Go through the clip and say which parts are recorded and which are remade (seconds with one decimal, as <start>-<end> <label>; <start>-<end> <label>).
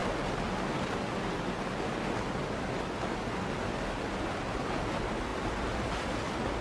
0.0-6.6 recorded